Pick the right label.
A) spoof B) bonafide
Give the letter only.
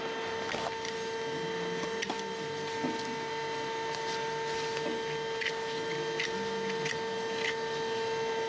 B